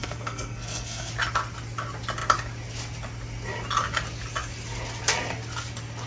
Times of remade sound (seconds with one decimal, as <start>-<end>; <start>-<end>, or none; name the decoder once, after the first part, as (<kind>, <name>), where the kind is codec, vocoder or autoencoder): 0.0-1.1 (codec, SNAC)